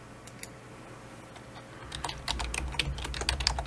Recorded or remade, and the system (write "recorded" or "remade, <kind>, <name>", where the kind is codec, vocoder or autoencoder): recorded